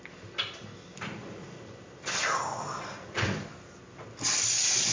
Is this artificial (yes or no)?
yes